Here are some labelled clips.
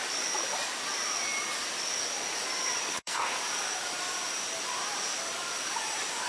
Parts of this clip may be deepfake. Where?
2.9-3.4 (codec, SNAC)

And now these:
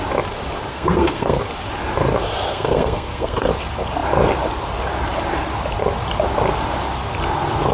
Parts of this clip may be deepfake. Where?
0.7-1.4 (codec, SNAC); 2.5-3.5

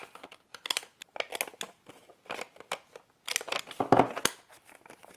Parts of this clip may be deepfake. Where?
none